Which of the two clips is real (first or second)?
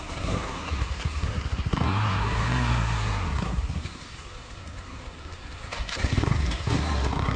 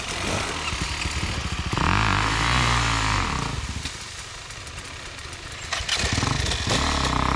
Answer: second